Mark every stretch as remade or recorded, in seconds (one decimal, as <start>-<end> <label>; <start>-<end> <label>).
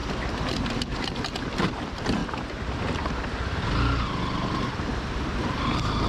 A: 0.0-1.5 recorded; 1.5-2.2 remade; 2.2-4.7 recorded; 4.7-6.1 remade